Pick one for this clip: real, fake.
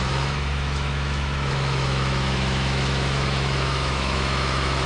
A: fake